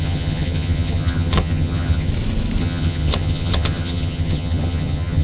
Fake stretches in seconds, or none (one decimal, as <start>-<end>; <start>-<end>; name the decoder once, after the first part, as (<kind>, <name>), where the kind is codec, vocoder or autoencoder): 0.0-2.1 (vocoder, HiFi-GAN); 2.6-5.2